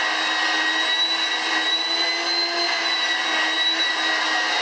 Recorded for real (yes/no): yes